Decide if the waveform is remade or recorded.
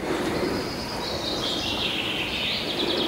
recorded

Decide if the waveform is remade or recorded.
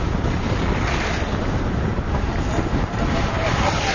recorded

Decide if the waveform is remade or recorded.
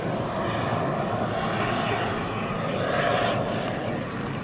recorded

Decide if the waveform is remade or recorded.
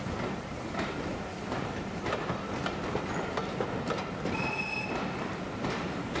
recorded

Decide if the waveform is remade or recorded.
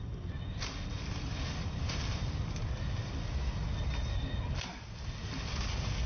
recorded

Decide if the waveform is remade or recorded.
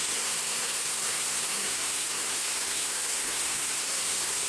remade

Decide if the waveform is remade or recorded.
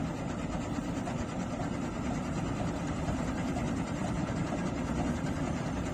remade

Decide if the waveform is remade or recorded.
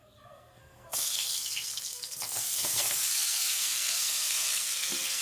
remade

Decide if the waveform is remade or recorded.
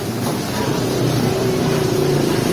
remade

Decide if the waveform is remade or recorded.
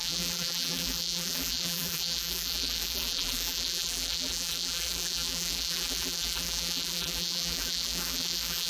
remade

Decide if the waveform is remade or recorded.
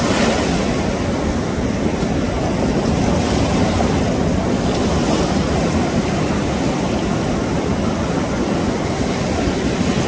recorded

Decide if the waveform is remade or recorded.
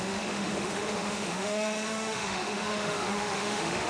remade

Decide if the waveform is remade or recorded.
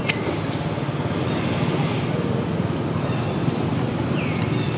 recorded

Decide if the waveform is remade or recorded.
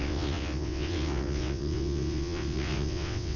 remade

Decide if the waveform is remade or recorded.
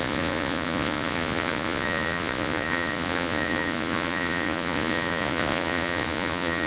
remade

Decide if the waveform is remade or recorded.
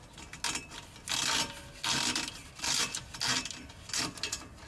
recorded